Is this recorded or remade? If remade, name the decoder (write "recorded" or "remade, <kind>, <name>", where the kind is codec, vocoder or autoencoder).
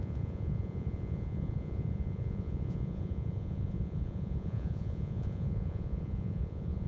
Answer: remade, vocoder, Vocos